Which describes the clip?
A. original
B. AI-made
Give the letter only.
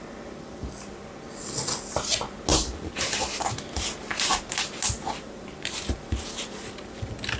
A